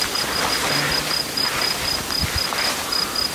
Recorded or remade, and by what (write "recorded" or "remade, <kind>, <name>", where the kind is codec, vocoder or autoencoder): recorded